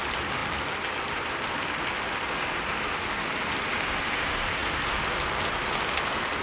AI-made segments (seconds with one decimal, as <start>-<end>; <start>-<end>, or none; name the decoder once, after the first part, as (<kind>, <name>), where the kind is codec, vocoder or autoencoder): none